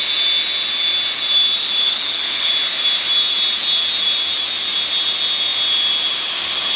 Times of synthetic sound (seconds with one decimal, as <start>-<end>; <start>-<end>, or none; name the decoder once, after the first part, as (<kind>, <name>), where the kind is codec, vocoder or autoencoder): 1.8-2.5 (codec, HILCodec)